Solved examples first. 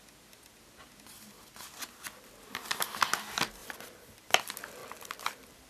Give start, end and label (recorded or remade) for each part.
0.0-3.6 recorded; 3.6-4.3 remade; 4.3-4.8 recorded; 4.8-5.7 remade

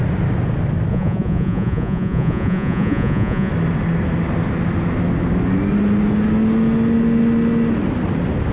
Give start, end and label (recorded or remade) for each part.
0.0-0.9 recorded; 0.9-3.5 remade; 3.5-8.5 recorded